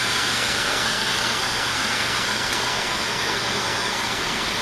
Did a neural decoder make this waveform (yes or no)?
yes